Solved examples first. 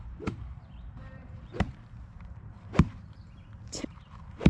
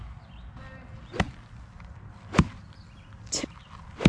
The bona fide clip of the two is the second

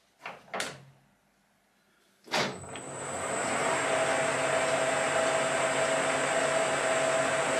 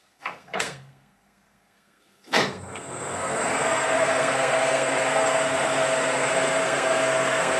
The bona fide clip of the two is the first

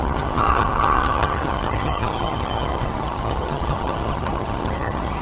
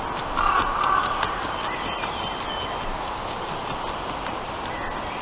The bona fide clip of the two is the second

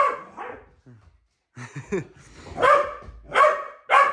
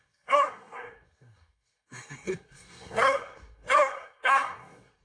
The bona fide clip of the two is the first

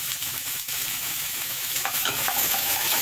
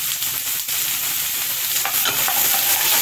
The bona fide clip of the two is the second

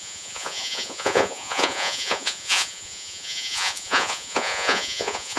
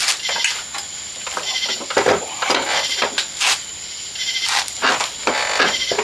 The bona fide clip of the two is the second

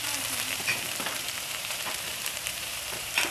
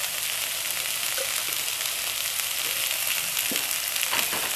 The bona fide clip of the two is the second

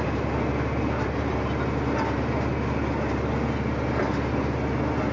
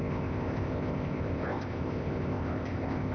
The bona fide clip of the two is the first